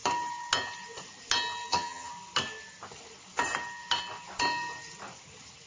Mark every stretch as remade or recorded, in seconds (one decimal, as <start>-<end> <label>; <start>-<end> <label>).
0.0-1.7 recorded; 1.7-2.1 remade; 2.1-5.7 recorded